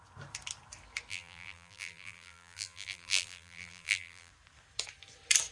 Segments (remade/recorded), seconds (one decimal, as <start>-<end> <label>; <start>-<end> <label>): 0.0-1.1 recorded; 1.1-4.3 remade; 4.3-5.5 recorded